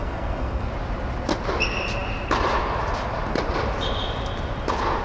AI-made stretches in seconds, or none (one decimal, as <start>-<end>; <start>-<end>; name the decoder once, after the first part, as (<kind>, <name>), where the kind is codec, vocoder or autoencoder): 0.0-0.7 (codec, SNAC)